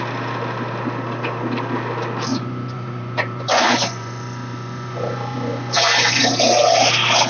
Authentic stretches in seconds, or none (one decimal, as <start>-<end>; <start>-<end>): 0.0-2.3; 6.2-7.3